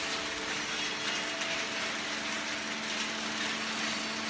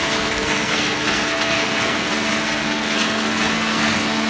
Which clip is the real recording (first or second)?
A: first